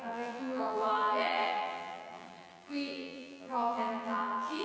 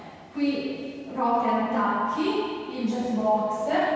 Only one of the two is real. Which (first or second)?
second